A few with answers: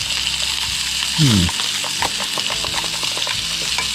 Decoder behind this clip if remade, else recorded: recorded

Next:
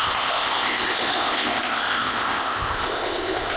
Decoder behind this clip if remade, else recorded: remade, codec, ZipCodec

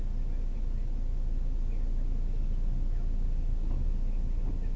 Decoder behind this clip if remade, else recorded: recorded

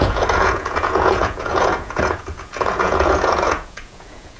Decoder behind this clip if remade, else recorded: remade, vocoder, Vocos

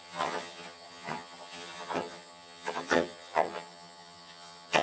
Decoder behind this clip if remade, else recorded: remade, vocoder, HiFi-GAN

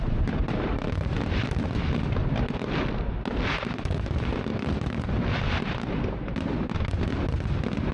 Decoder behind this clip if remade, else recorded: recorded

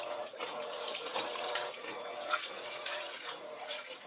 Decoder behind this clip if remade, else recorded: remade, vocoder, Vocos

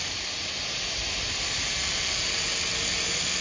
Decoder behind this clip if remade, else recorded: recorded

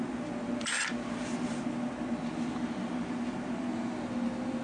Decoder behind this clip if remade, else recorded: recorded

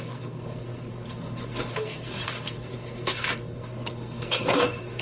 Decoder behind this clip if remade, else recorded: remade, codec, SNAC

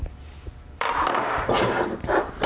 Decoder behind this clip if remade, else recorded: remade, vocoder, BigVGAN v2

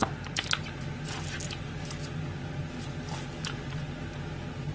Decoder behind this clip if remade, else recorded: recorded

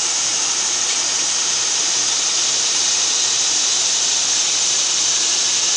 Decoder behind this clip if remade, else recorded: remade, vocoder, BigVGAN v2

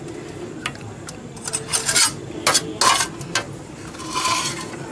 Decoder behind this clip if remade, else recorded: recorded